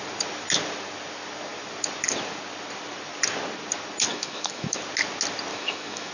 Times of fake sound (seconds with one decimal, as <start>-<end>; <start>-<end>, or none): 4.1-4.8; 5.5-6.1